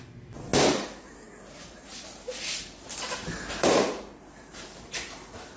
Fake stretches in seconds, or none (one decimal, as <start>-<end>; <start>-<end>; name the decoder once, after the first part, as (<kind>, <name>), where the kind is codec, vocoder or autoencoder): none